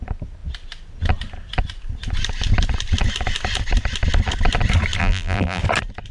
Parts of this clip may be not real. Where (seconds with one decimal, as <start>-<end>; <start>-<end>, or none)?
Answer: 5.0-5.6